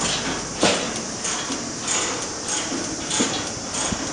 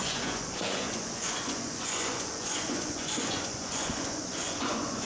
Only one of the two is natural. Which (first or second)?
first